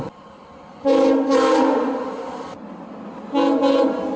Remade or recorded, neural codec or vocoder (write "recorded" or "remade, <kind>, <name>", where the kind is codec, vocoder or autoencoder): recorded